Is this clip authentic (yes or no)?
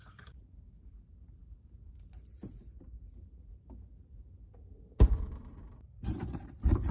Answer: no